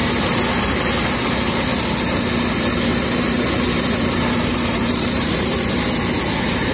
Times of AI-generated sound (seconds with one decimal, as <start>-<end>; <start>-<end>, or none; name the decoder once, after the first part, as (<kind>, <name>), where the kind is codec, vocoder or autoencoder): 2.9-5.7 (vocoder, BigVGAN v2)